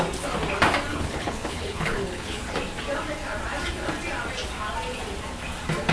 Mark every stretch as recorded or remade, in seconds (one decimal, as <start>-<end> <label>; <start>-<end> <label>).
0.0-0.9 recorded; 0.9-2.4 remade; 2.4-5.9 recorded